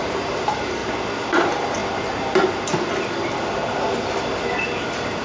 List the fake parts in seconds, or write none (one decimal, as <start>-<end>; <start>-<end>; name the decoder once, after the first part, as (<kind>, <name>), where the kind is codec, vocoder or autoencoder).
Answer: 0.0-0.8 (vocoder, BigVGAN v2); 1.3-1.8; 4.8-5.2